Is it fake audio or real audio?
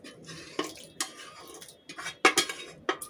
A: real